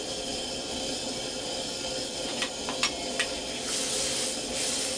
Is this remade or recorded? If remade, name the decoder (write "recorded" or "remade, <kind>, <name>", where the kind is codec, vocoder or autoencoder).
recorded